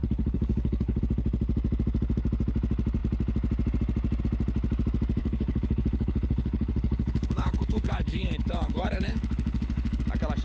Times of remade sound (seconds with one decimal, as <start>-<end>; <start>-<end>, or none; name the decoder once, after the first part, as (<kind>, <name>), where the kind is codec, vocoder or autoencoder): 0.0-1.0 (codec, HILCodec); 5.2-10.0